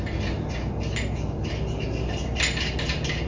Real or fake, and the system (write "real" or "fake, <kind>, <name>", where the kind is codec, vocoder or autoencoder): real